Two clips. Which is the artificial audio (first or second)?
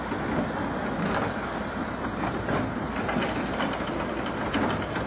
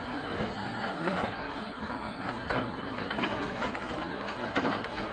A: second